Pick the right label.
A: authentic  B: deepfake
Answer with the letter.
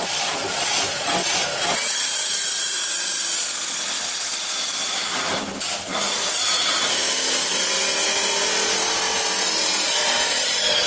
A